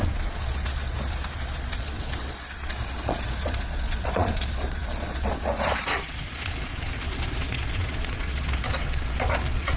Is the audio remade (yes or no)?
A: yes